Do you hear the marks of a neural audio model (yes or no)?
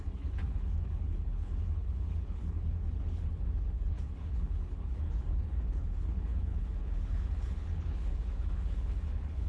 yes